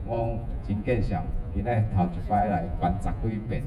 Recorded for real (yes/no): no